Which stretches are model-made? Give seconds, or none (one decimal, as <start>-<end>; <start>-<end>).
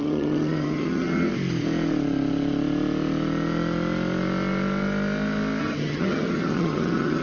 0.0-1.3; 5.6-7.2